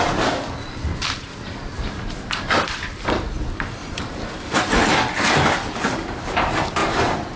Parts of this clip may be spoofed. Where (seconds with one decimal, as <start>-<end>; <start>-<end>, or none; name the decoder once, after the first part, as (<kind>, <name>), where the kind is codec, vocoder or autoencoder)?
3.8-4.9 (vocoder, BigVGAN v2); 6.8-7.4